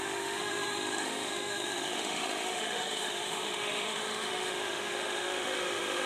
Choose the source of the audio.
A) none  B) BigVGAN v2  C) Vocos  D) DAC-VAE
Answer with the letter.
D